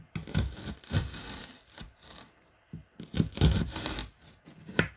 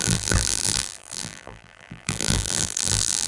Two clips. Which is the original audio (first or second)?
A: first